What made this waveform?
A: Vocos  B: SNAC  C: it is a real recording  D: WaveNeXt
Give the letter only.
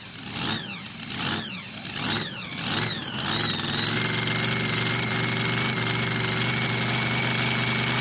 C